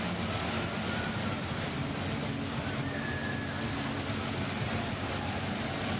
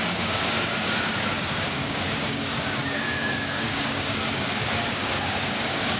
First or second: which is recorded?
first